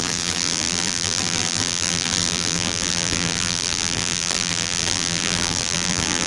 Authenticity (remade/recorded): remade